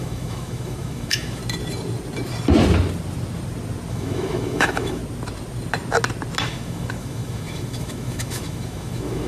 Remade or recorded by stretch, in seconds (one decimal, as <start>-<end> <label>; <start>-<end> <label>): 0.0-1.4 remade; 1.4-3.9 recorded; 3.9-5.0 remade; 5.0-6.4 recorded; 6.4-9.3 remade